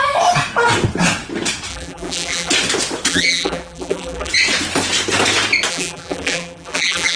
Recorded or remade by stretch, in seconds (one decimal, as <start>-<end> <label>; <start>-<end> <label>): 0.0-1.7 recorded; 1.7-2.5 remade; 2.5-3.1 recorded; 3.1-4.3 remade; 4.3-5.7 recorded; 5.7-7.2 remade